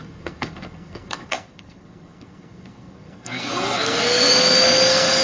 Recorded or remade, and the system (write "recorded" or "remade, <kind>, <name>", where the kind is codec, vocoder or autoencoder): remade, codec, SNAC